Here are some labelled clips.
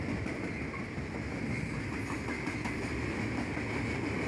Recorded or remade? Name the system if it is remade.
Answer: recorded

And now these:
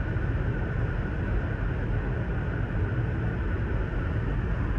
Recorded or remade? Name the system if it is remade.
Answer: recorded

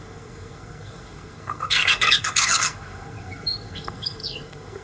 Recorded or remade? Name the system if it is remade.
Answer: remade, codec, SNAC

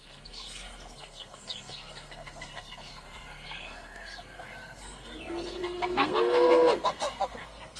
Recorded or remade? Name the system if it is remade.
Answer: remade, codec, SNAC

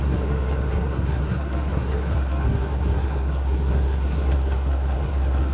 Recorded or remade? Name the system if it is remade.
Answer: remade, codec, SNAC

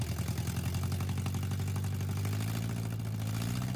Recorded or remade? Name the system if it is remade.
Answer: recorded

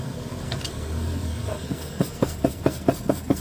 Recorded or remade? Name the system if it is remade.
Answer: remade, codec, SNAC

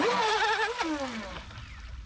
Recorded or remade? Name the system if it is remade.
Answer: recorded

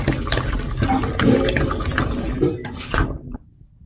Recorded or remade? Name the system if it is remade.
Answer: recorded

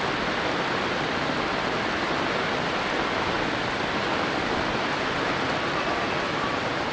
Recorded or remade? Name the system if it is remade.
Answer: recorded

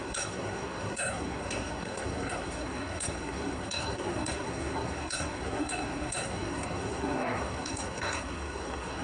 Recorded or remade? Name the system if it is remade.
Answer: remade, codec, SNAC